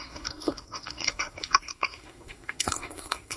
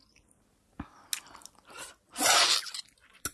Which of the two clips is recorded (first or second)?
second